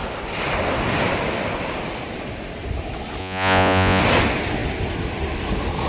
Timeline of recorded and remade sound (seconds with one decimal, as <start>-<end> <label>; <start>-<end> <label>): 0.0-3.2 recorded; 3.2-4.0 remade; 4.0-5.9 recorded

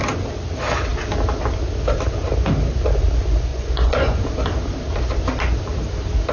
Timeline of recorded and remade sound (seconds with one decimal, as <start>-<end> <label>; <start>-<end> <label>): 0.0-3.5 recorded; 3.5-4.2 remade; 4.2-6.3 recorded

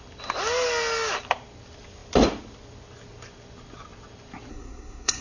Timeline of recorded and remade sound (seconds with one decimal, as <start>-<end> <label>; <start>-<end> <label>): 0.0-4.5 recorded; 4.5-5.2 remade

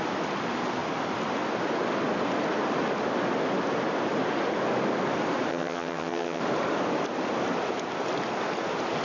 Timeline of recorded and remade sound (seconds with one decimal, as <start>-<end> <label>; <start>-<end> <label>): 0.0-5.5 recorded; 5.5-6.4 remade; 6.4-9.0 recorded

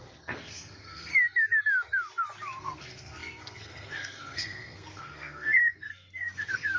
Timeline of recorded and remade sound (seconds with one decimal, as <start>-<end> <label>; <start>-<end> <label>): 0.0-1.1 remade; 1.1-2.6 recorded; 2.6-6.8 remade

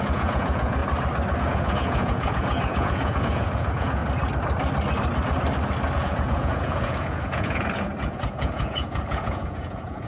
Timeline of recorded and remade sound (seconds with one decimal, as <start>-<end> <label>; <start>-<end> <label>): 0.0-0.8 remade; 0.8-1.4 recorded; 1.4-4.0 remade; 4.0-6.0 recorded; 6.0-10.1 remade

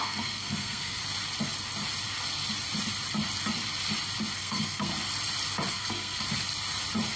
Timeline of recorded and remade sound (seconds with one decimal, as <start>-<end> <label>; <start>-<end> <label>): 0.0-1.0 remade; 1.0-4.4 recorded; 4.4-4.9 remade; 4.9-5.7 recorded; 5.7-6.2 remade; 6.2-7.2 recorded

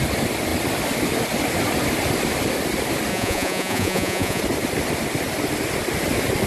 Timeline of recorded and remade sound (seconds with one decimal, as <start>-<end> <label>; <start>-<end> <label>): 0.0-3.1 recorded; 3.1-4.4 remade; 4.4-6.5 recorded